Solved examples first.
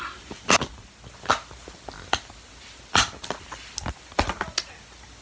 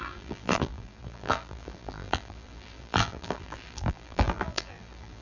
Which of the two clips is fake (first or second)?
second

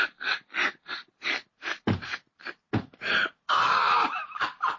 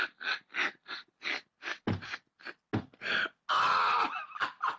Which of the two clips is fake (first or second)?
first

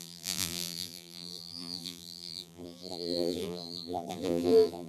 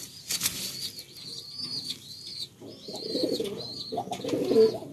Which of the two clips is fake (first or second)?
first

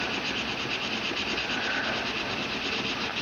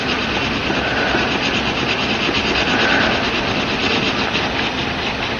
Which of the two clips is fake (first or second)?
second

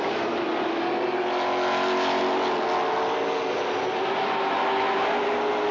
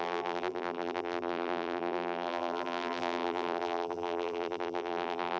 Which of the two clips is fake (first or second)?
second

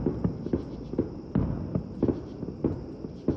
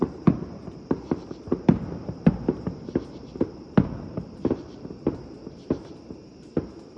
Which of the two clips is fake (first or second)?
second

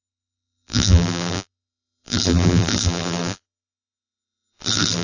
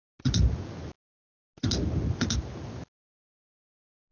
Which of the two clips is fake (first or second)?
first